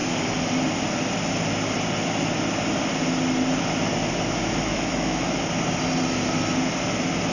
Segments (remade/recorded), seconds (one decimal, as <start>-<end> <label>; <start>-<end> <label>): 0.0-4.7 recorded; 4.7-5.4 remade; 5.4-7.3 recorded